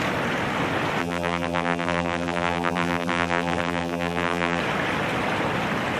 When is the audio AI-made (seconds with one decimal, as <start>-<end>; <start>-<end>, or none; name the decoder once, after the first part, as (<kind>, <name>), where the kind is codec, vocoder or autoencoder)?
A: 1.0-4.6 (vocoder, BigVGAN v2)